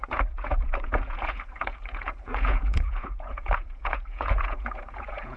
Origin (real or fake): fake